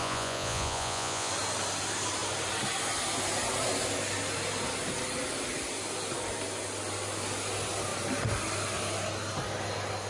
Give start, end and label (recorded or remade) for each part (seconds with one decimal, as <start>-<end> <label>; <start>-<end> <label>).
0.0-1.3 remade; 1.3-10.1 recorded